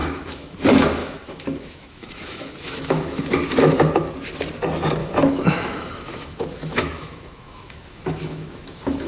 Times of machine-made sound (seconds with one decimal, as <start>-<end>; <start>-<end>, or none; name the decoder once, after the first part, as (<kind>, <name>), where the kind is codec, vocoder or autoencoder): 0.0-0.6 (autoencoder, DAC-VAE); 1.0-3.2; 5.0-9.1